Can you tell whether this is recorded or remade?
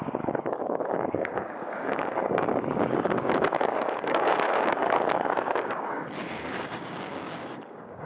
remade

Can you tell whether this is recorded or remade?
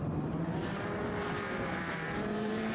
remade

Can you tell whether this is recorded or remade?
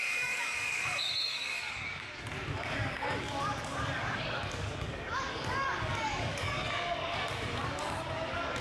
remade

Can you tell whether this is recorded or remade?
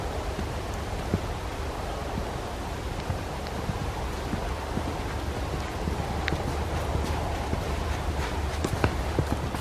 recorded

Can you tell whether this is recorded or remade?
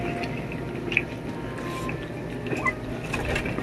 recorded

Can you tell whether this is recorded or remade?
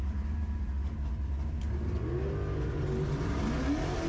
recorded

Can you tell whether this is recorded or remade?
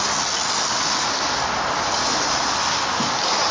recorded